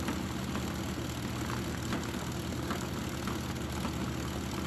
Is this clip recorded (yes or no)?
yes